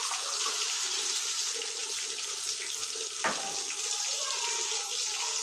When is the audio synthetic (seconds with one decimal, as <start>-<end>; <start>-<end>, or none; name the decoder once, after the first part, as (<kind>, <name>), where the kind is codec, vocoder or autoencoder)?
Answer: none